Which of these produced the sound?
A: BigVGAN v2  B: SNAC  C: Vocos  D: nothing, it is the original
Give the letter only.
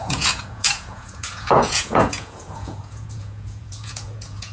C